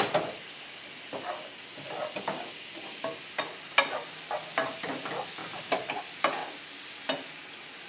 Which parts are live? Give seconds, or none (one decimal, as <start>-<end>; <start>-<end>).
0.0-5.4; 6.0-7.9